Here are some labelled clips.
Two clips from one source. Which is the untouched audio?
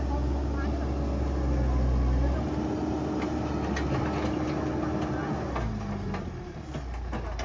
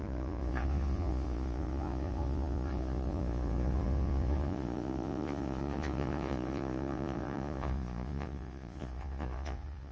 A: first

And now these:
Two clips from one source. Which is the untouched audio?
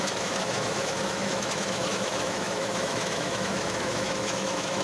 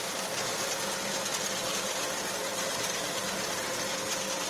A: second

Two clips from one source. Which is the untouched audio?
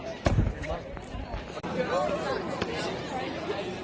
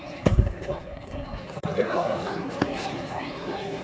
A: first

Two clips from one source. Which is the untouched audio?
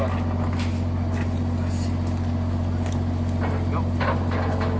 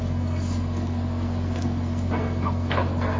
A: first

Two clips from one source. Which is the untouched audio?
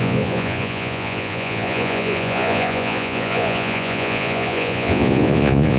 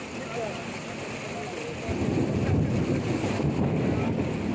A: second